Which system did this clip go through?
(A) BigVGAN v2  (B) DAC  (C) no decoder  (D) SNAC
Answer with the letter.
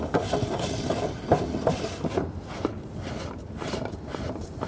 C